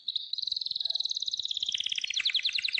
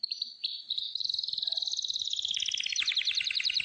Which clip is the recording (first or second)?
first